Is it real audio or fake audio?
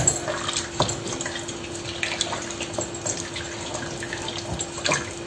real